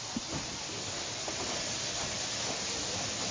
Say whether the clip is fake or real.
real